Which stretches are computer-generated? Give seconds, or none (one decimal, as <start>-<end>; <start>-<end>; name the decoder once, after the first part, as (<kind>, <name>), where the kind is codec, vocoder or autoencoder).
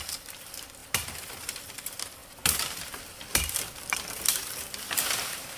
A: 0.0-5.6 (vocoder, BigVGAN v2)